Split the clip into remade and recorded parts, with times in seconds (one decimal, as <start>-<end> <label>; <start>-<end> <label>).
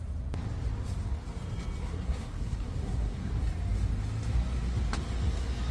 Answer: 0.0-1.8 recorded; 1.8-3.3 remade; 3.3-5.7 recorded